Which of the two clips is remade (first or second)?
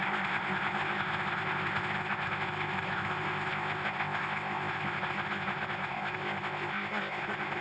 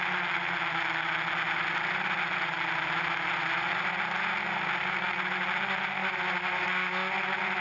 first